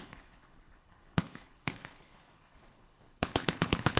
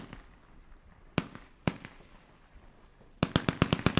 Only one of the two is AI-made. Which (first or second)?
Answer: first